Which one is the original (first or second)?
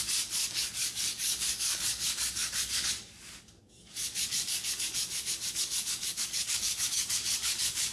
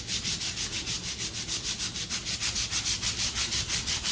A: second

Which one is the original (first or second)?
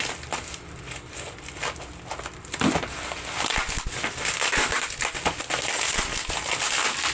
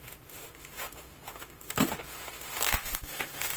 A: first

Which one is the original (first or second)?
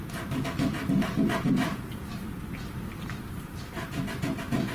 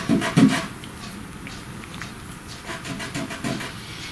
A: second